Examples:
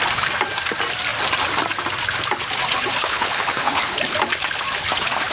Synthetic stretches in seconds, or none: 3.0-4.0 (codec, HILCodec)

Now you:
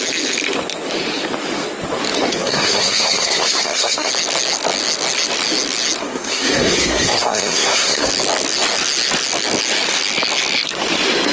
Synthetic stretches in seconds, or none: 2.3-4.1 (codec, SNAC); 6.0-8.1